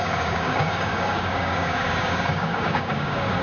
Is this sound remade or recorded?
remade